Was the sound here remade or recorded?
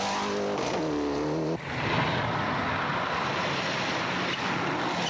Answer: recorded